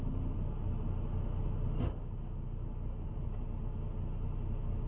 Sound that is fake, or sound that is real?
real